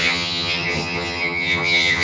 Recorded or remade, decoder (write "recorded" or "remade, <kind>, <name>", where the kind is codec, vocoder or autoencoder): remade, vocoder, HiFi-GAN